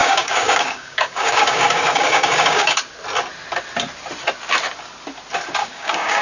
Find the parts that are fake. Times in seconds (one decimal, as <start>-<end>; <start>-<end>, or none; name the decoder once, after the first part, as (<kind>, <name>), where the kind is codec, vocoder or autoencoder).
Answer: 0.0-2.8 (codec, DAC); 5.6-6.2